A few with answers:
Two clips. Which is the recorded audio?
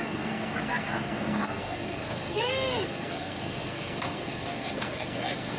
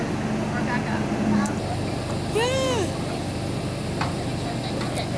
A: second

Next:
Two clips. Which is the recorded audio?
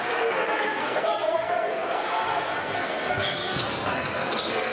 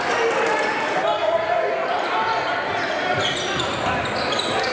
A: second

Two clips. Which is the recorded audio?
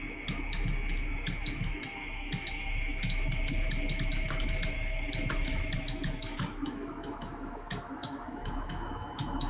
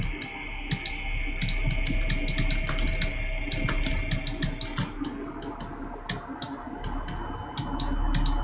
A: second